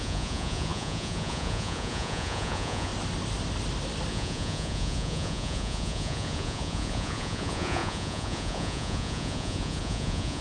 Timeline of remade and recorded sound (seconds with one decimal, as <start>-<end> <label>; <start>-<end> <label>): 0.0-2.9 remade; 2.9-4.1 recorded; 4.1-10.4 remade